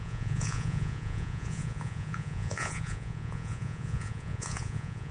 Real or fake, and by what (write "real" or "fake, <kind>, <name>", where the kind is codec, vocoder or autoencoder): fake, vocoder, Vocos